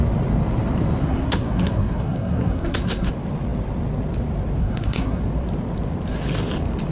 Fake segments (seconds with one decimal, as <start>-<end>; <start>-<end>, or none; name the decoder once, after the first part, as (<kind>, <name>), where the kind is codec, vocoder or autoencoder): 1.0-3.1 (codec, SNAC); 4.6-5.2